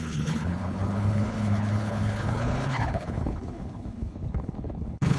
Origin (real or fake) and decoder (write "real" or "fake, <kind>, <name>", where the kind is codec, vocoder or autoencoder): fake, codec, HILCodec